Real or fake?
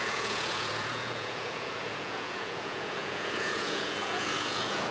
fake